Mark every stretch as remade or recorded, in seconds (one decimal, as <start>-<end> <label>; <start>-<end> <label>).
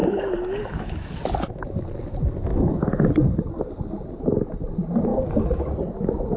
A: 0.0-1.3 remade; 1.3-2.5 recorded; 2.5-3.1 remade; 3.1-6.4 recorded